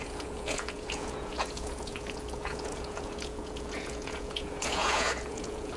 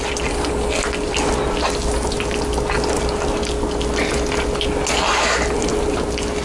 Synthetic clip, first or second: first